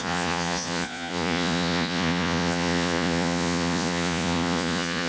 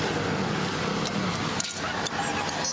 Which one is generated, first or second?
first